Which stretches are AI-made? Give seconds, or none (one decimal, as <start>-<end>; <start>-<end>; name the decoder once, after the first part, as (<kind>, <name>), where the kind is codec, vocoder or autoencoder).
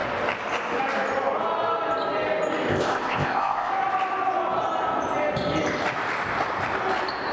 2.7-3.7 (codec, ZipCodec)